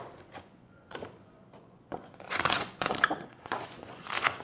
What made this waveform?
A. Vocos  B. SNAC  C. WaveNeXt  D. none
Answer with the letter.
A